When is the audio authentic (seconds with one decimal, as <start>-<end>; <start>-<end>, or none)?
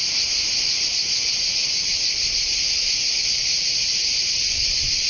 0.0-5.1